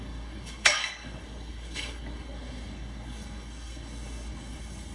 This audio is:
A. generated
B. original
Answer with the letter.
A